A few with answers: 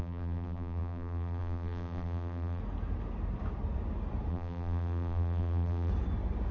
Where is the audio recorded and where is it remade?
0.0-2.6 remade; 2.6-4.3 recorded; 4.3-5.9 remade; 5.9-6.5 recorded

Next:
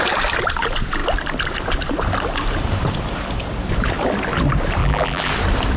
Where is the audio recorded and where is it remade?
0.0-4.8 recorded; 4.8-5.3 remade; 5.3-5.8 recorded

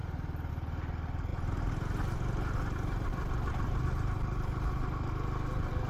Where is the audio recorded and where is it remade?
0.0-5.9 recorded

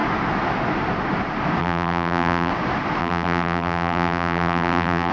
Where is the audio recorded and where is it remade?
0.0-1.6 recorded; 1.6-2.5 remade; 2.5-3.0 recorded; 3.0-5.1 remade

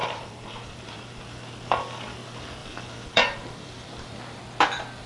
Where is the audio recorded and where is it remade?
0.0-1.2 remade; 1.2-2.6 recorded; 2.6-4.4 remade; 4.4-5.1 recorded

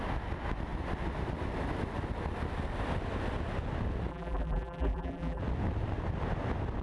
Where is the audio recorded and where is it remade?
0.0-4.1 recorded; 4.1-5.4 remade; 5.4-6.8 recorded

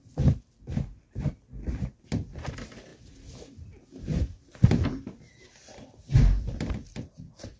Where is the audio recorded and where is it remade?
0.0-7.6 remade